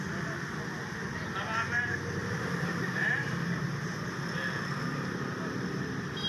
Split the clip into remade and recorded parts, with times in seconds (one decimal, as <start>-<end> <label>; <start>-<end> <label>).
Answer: 0.0-2.2 recorded; 2.2-3.6 remade; 3.6-6.3 recorded

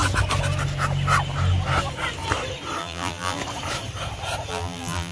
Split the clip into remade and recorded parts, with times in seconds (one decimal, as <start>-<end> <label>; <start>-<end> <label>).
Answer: 0.0-2.8 recorded; 2.8-3.4 remade; 3.4-4.5 recorded; 4.5-5.1 remade